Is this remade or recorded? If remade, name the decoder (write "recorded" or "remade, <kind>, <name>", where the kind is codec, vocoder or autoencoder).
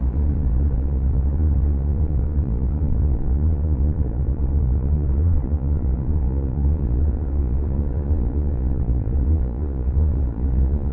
remade, vocoder, Vocos